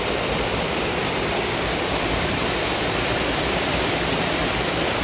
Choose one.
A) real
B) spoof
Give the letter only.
B